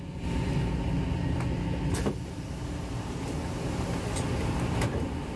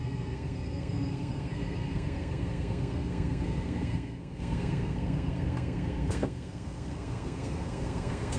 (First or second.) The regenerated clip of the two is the second